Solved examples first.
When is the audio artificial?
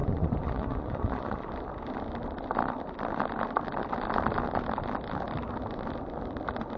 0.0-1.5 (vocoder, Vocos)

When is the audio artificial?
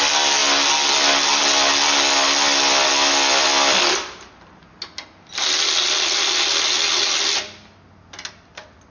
none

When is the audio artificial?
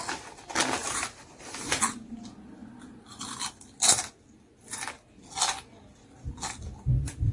0.8-1.8 (vocoder, BigVGAN v2)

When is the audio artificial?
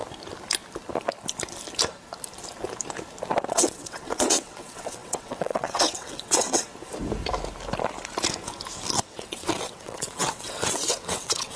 3.5-6.7 (vocoder, WaveNeXt); 9.0-11.6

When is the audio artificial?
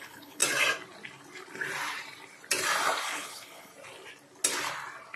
0.0-0.4 (codec, HILCodec); 3.0-3.7